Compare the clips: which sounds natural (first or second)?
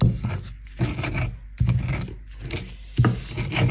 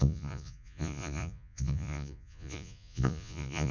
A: first